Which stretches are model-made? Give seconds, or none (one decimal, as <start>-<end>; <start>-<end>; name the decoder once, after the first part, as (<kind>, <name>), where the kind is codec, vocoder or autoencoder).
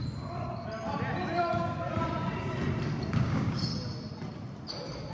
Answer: 3.1-3.7 (codec, DAC)